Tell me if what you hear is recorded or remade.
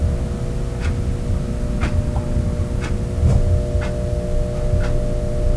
recorded